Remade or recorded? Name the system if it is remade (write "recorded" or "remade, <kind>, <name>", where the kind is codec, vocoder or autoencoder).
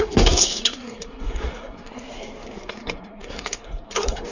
remade, codec, SNAC